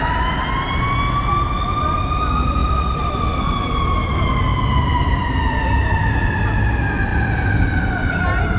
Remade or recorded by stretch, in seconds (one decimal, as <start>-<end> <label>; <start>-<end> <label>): 0.0-2.6 recorded; 2.6-4.1 remade; 4.1-4.9 recorded; 4.9-5.6 remade; 5.6-7.1 recorded; 7.1-8.2 remade; 8.2-8.6 recorded